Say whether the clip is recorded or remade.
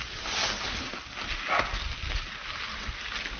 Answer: recorded